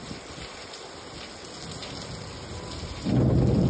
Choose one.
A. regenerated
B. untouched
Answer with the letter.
B